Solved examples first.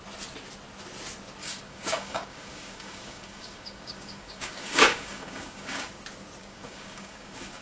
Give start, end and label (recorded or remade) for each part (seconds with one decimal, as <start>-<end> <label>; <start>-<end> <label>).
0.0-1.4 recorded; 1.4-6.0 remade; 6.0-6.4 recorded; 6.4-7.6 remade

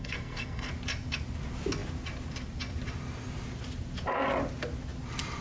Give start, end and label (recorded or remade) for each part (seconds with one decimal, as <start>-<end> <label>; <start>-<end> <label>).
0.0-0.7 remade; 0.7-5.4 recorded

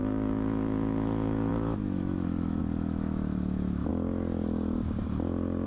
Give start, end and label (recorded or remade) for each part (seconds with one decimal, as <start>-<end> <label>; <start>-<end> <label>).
0.0-3.9 remade; 3.9-5.7 recorded